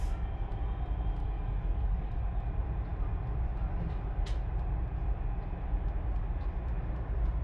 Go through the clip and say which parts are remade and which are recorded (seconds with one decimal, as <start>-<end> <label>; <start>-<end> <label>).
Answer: 0.0-1.2 recorded; 1.2-2.2 remade; 2.2-7.4 recorded

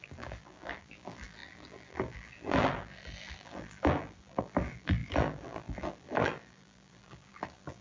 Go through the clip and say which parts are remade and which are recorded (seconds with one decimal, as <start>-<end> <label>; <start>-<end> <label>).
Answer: 0.0-7.8 remade

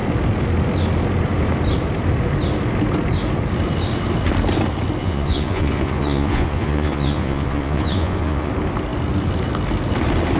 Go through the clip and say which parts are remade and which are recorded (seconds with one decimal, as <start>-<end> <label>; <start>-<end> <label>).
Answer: 0.0-5.0 recorded; 5.0-8.5 remade; 8.5-10.4 recorded

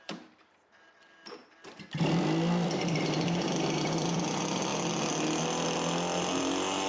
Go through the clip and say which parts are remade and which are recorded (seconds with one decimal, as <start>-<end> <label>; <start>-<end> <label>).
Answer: 0.0-4.7 remade; 4.7-6.4 recorded; 6.4-6.9 remade

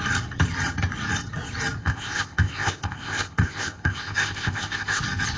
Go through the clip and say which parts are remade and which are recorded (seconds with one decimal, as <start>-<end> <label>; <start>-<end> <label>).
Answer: 0.0-1.8 recorded; 1.8-5.0 remade; 5.0-5.4 recorded

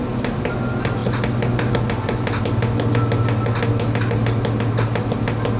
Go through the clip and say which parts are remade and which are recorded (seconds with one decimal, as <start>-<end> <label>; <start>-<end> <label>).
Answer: 0.0-5.6 recorded

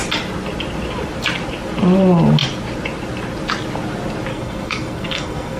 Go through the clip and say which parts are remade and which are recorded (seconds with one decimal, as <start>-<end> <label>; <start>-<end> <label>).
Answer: 0.0-4.3 recorded; 4.3-5.6 remade

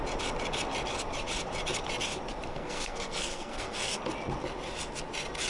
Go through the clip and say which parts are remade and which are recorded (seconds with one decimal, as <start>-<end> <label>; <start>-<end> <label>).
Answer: 0.0-2.5 recorded; 2.5-4.0 remade; 4.0-5.5 recorded